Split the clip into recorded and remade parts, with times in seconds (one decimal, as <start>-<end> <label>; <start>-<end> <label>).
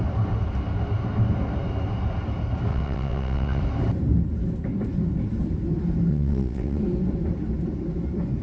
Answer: 0.0-2.7 recorded; 2.7-3.6 remade; 3.6-6.1 recorded; 6.1-6.8 remade; 6.8-8.4 recorded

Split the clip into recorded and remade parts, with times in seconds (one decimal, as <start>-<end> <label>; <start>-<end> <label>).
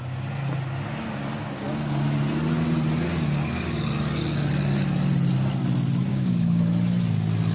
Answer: 0.0-6.1 recorded; 6.1-6.6 remade; 6.6-7.5 recorded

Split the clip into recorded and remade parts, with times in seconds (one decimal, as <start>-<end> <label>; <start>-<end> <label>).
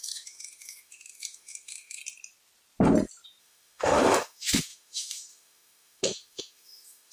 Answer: 0.0-2.0 remade; 2.0-3.4 recorded; 3.4-7.1 remade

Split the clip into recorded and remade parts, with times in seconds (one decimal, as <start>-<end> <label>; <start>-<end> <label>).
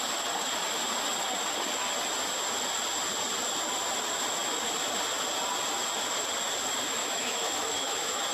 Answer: 0.0-7.0 recorded; 7.0-8.3 remade